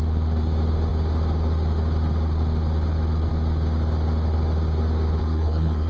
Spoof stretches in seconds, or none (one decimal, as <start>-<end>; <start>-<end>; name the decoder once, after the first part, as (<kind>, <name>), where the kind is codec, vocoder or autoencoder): 5.2-5.9 (codec, SNAC)

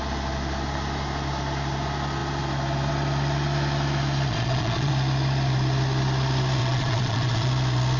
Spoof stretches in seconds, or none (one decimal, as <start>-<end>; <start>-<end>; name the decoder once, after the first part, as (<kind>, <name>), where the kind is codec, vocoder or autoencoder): 4.3-4.9 (vocoder, Vocos); 6.6-7.5

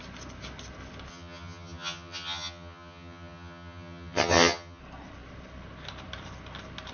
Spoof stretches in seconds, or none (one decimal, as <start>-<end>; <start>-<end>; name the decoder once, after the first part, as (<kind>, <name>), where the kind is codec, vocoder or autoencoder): 1.1-4.8 (vocoder, HiFi-GAN)